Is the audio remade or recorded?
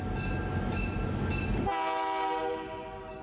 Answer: recorded